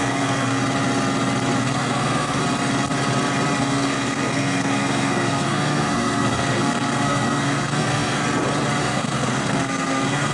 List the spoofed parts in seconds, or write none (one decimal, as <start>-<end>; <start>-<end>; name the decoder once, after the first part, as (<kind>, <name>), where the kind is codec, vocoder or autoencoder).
0.0-0.6 (codec, SNAC); 1.6-2.4; 3.6-8.2; 8.8-10.3